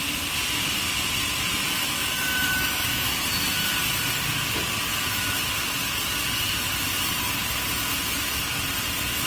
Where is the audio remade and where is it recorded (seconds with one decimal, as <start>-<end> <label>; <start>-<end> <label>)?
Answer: 0.0-1.8 recorded; 1.8-3.3 remade; 3.3-9.3 recorded

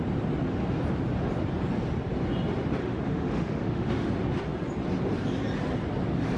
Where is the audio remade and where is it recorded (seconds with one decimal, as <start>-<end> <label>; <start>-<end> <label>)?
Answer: 0.0-2.8 recorded; 2.8-4.1 remade; 4.1-6.4 recorded

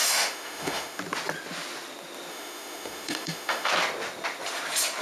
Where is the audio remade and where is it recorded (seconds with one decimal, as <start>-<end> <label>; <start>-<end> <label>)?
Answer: 0.0-1.0 remade; 1.0-2.3 recorded; 2.3-3.7 remade; 3.7-5.0 recorded